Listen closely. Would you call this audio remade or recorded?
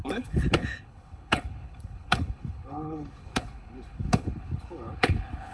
remade